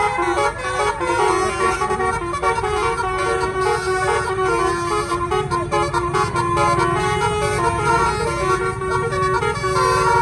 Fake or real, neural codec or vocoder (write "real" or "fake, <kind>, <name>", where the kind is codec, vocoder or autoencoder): real